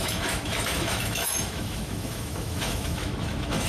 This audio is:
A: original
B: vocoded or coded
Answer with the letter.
B